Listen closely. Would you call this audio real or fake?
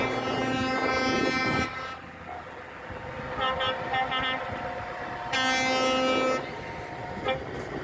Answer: real